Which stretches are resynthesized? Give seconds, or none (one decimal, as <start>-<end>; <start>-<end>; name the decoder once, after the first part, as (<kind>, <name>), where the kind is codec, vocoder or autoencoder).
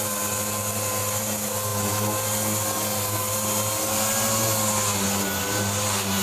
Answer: none